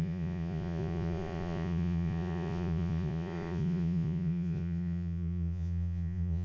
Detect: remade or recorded remade